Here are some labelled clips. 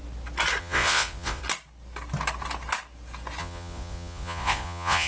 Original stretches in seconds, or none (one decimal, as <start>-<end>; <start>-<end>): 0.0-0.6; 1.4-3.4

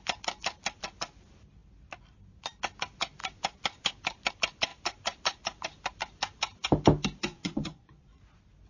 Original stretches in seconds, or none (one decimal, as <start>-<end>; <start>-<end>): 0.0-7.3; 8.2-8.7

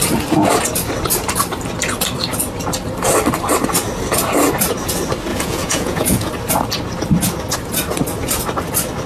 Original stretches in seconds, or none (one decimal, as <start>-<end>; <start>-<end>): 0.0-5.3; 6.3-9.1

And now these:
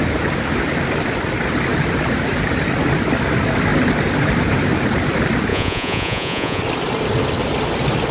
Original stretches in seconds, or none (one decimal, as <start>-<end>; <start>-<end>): 0.0-5.5; 6.6-8.1

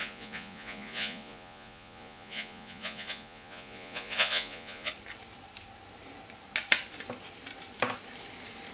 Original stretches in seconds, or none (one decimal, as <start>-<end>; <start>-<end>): 4.9-8.7

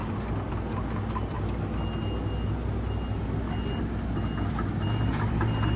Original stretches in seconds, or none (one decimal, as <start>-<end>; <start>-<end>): 0.0-5.8